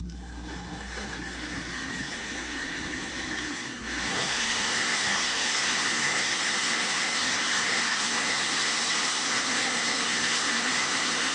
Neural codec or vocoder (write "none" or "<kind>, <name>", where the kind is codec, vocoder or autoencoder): codec, SNAC